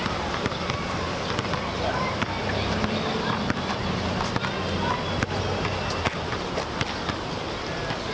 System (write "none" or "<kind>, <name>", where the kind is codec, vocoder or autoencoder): none